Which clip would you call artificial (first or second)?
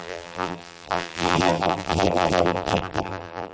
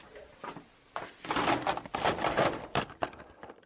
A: first